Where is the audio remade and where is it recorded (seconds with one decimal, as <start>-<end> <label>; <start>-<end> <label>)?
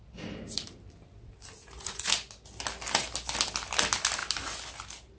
0.0-1.6 recorded; 1.6-2.1 remade; 2.1-5.2 recorded